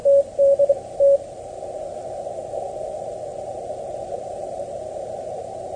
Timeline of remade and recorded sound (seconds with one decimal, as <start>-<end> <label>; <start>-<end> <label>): 0.0-0.7 remade; 0.7-3.3 recorded; 3.3-5.8 remade